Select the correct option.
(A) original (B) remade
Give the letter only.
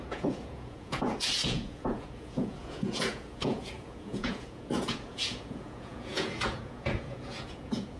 B